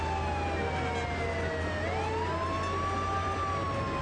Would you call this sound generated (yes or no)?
no